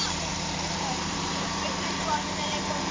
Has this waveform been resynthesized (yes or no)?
yes